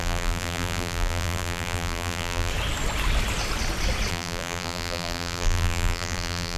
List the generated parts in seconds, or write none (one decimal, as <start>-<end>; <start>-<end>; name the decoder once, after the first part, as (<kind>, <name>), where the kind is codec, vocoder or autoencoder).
0.0-2.5 (vocoder, BigVGAN v2); 4.1-6.6